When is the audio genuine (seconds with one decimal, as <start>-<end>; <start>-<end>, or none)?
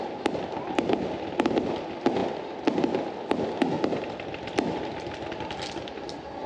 0.0-6.5